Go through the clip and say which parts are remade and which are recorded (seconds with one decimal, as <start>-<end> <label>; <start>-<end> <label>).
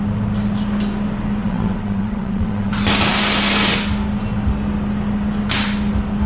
0.0-1.4 recorded; 1.4-2.7 remade; 2.7-6.3 recorded